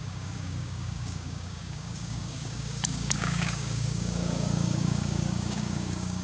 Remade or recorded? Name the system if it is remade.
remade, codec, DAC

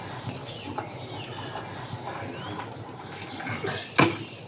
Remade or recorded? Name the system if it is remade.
recorded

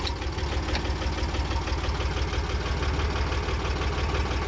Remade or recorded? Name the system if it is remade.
recorded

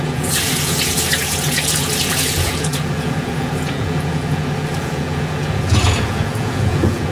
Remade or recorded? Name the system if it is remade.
remade, vocoder, Vocos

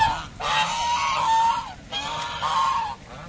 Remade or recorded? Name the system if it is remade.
recorded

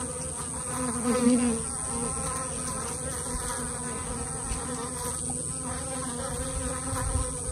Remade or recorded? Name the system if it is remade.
recorded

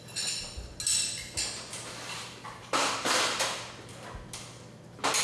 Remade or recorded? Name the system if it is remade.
recorded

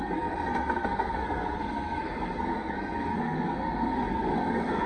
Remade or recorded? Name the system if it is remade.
remade, codec, SNAC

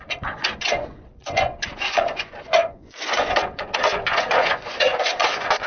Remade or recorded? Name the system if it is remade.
remade, vocoder, Vocos